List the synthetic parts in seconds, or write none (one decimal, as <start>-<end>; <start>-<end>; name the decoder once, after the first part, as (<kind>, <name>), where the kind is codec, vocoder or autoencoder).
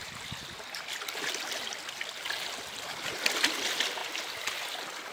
none